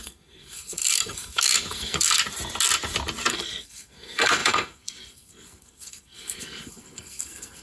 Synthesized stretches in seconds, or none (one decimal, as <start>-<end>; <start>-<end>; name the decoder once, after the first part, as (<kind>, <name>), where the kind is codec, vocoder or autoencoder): 0.0-2.2 (codec, SNAC); 3.3-7.6